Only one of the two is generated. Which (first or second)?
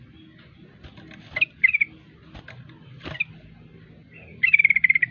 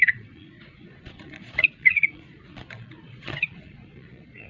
second